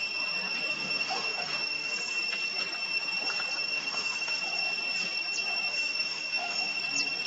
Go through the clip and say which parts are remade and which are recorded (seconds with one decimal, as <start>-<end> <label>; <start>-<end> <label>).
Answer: 0.0-0.7 recorded; 0.7-1.9 remade; 1.9-3.7 recorded; 3.7-4.4 remade; 4.4-5.7 recorded; 5.7-6.8 remade; 6.8-7.3 recorded